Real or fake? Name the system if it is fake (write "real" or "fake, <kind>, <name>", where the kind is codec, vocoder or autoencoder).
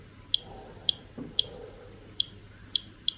real